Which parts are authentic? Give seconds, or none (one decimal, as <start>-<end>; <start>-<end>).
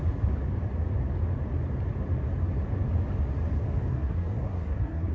0.0-3.9